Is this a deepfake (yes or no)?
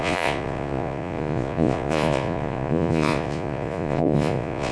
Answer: yes